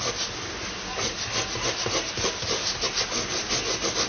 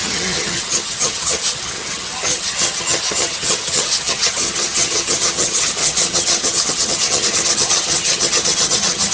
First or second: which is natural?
first